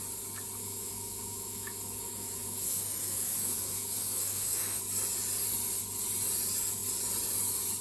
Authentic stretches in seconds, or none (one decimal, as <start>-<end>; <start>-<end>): 0.0-0.6; 4.8-7.8